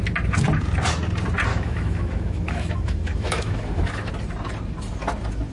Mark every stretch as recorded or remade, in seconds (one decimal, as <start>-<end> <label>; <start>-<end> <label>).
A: 0.0-1.5 recorded; 1.5-4.1 remade; 4.1-5.5 recorded